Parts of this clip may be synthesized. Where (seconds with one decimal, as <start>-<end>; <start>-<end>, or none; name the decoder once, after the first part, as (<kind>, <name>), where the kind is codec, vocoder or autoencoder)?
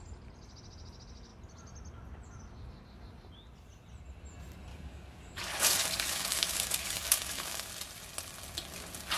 4.7-7.7 (codec, DAC)